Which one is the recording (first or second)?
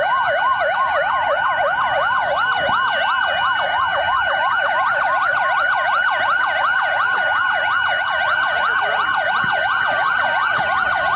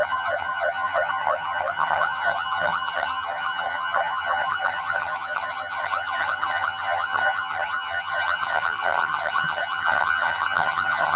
first